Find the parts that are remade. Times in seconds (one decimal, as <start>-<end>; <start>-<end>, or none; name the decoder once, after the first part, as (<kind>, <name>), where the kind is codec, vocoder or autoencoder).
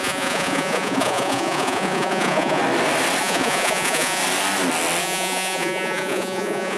0.0-2.6 (vocoder, Vocos); 3.2-4.2; 5.0-6.8